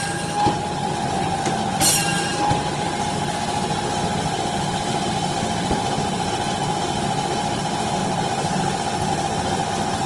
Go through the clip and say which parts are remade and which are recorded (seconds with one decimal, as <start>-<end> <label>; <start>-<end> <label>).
0.0-10.1 recorded